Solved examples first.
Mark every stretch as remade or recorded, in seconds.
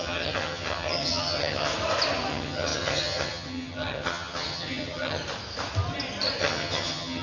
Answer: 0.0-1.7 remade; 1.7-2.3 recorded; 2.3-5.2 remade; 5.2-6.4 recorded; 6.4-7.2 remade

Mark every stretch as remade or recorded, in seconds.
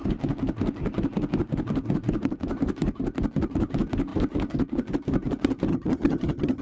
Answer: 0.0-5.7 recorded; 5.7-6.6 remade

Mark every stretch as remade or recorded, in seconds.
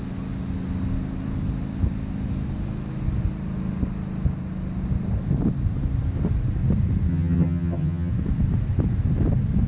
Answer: 0.0-7.1 recorded; 7.1-8.1 remade; 8.1-9.7 recorded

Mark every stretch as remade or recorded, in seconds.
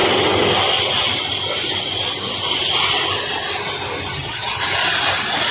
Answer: 0.0-4.1 recorded; 4.1-4.6 remade; 4.6-5.5 recorded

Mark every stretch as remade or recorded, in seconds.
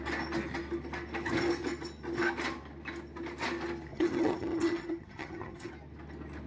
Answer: 0.0-3.9 recorded; 3.9-5.7 remade; 5.7-6.5 recorded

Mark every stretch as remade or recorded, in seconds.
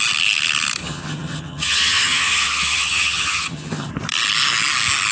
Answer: 0.0-0.8 recorded; 0.8-3.9 remade; 3.9-5.1 recorded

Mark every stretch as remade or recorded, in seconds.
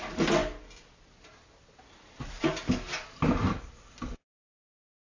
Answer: 0.0-5.1 recorded